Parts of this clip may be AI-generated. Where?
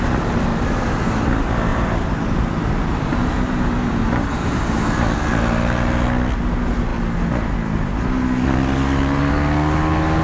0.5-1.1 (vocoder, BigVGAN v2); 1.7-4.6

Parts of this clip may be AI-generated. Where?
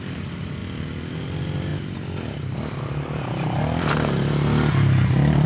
0.0-0.6 (vocoder, BigVGAN v2); 1.2-5.5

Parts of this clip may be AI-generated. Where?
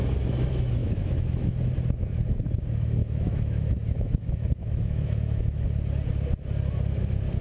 0.8-1.5 (autoencoder, DAC-VAE); 3.0-5.6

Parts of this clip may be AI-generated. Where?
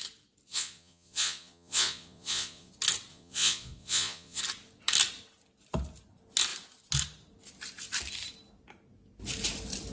0.5-2.7 (vocoder, Vocos); 3.1-4.4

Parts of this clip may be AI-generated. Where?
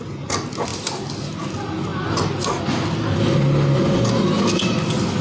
none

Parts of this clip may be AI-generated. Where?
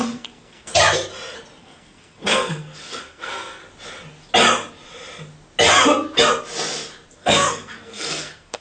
0.0-0.7 (codec, SNAC); 1.6-3.6; 7.1-8.6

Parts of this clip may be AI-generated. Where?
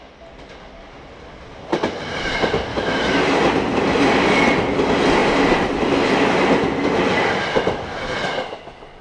2.7-3.2 (autoencoder, DAC-VAE)